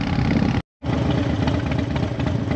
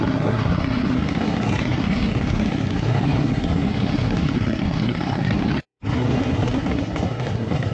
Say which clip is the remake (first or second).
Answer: second